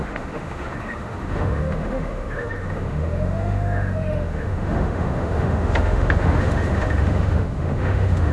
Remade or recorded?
remade